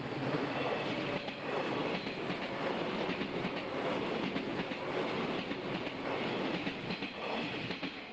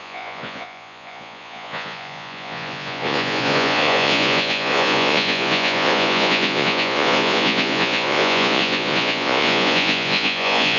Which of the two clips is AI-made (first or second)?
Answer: second